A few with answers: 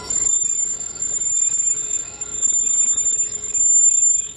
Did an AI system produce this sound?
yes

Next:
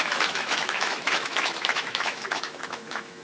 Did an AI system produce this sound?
yes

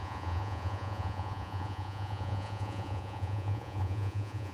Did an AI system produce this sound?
yes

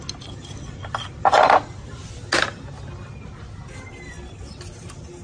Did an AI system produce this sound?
no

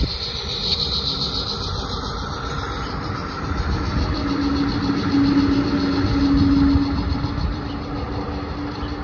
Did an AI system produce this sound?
no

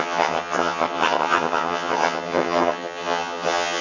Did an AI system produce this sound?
yes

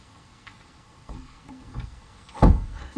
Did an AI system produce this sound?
yes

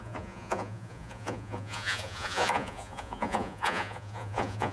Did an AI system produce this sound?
yes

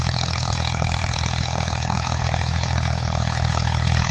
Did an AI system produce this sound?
yes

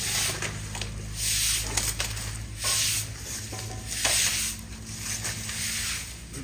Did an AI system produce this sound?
no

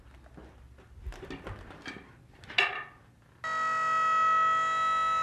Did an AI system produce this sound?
no